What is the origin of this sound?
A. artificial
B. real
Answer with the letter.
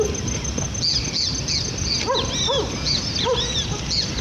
B